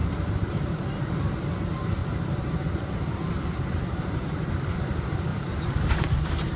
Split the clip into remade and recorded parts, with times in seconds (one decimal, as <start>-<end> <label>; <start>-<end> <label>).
0.0-0.8 remade; 0.8-2.0 recorded; 2.0-4.5 remade; 4.5-5.3 recorded; 5.3-5.9 remade; 5.9-6.6 recorded